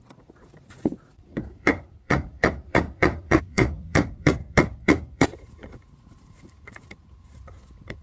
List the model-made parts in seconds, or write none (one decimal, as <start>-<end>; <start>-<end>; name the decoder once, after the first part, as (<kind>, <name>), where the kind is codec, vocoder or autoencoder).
0.0-8.0 (vocoder, Vocos)

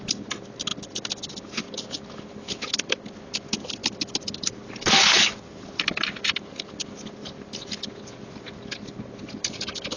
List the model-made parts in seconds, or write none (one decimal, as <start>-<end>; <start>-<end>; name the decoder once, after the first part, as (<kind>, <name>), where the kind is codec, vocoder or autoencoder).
none

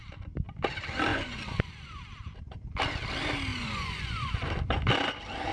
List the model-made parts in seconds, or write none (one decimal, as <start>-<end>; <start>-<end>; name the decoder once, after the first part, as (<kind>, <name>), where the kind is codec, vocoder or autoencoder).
1.1-2.0 (vocoder, Vocos); 3.5-4.3

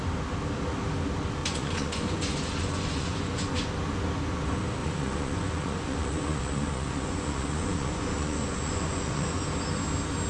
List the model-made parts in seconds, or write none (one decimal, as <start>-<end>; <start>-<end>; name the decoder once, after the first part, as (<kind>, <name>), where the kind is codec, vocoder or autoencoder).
1.4-3.7 (vocoder, Vocos); 4.8-9.4

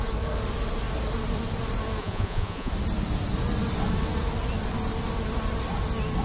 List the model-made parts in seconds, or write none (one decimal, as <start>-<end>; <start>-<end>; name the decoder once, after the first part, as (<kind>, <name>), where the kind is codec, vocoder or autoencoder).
2.0-2.7 (vocoder, Vocos)

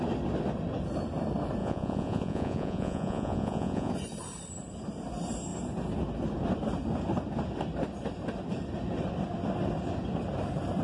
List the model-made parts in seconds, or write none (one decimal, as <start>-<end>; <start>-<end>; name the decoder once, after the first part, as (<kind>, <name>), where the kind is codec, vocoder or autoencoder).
1.6-3.9 (vocoder, Vocos)